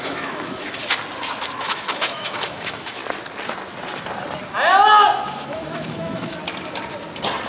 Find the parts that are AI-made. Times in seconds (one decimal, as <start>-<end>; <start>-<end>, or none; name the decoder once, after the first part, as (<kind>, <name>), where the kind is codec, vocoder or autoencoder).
0.0-0.8 (autoencoder, DAC-VAE); 1.6-3.0; 5.3-6.4

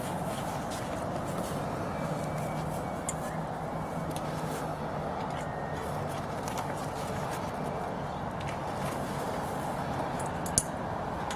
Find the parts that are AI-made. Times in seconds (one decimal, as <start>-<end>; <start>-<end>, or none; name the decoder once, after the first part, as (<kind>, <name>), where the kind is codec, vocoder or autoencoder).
none

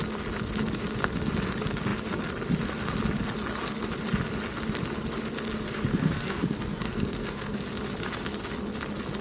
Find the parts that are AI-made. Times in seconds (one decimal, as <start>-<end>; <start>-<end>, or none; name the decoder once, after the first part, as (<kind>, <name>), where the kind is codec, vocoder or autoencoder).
5.9-7.6 (codec, SNAC)